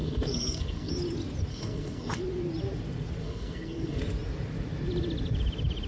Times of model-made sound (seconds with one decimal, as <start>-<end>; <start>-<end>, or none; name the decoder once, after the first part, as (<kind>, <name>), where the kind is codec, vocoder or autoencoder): 0.0-0.9 (codec, SNAC); 1.5-2.2; 3.2-4.0